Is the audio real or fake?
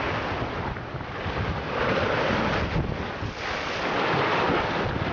real